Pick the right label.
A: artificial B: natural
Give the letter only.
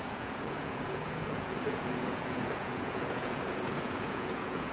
A